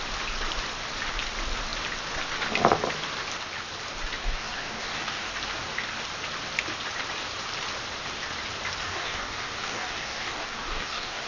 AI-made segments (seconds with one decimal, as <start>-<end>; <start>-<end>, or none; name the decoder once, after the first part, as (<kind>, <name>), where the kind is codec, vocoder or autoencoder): 4.2-5.3 (codec, DAC); 8.8-11.3

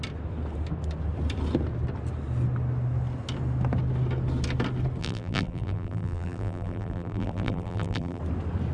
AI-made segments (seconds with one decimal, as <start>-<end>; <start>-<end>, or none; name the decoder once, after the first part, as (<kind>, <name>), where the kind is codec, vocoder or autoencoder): 5.0-8.2 (vocoder, BigVGAN v2)

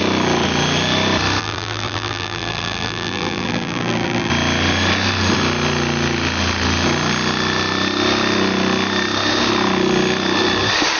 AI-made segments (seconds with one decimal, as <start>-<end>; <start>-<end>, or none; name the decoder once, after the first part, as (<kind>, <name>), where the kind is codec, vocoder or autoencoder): 1.4-4.3 (vocoder, BigVGAN v2)

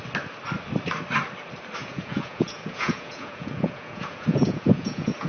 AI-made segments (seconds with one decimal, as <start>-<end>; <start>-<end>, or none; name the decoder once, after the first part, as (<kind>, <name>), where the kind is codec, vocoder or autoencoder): 1.8-5.3 (vocoder, Vocos)